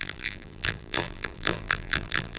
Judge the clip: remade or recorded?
remade